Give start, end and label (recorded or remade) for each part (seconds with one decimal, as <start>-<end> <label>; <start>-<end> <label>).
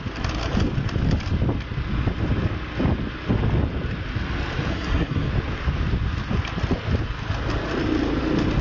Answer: 0.0-4.7 recorded; 4.7-5.3 remade; 5.3-8.6 recorded